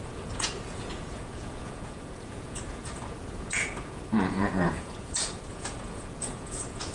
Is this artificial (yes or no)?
yes